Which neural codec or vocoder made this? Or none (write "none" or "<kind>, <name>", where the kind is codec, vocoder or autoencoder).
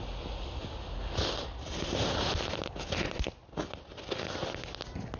none